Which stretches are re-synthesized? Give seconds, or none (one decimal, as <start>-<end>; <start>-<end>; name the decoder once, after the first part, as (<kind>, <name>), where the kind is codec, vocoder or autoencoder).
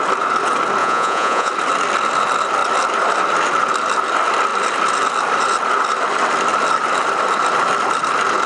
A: 0.8-1.5 (vocoder, Vocos)